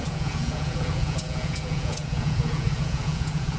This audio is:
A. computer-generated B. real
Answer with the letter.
A